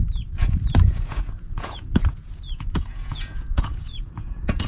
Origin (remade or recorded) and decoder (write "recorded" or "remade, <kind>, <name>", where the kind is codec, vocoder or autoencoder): remade, vocoder, Vocos